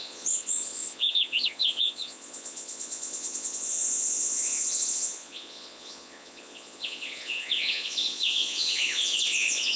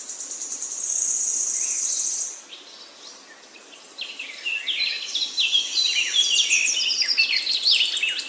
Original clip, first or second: second